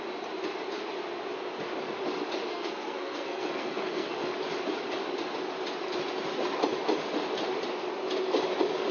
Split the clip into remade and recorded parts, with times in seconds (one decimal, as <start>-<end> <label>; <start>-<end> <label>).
0.0-2.5 recorded; 2.5-4.2 remade; 4.2-8.9 recorded